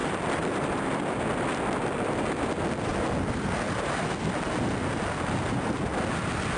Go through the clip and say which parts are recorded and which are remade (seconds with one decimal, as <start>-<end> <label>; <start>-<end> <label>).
0.0-1.2 remade; 1.2-6.6 recorded